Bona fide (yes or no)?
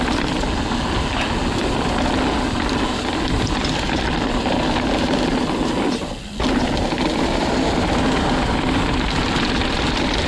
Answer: yes